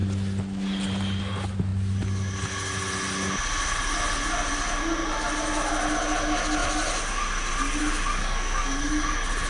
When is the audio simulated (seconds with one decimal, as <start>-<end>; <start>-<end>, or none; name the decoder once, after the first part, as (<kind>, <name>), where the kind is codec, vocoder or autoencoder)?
8.2-8.8 (codec, SNAC)